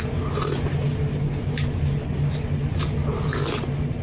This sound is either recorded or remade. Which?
recorded